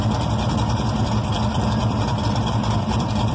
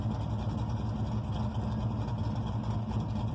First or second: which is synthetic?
first